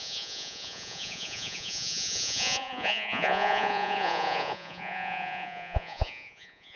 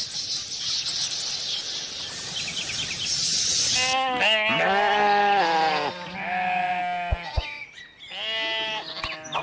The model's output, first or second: first